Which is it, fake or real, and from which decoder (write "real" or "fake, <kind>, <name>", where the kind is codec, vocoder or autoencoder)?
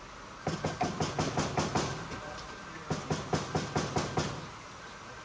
real